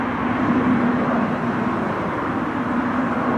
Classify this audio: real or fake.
real